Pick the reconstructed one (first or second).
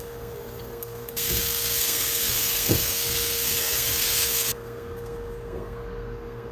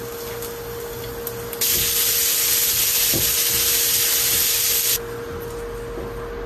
first